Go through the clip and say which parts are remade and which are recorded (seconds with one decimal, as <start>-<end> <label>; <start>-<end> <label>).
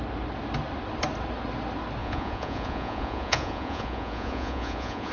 0.0-2.0 recorded; 2.0-5.1 remade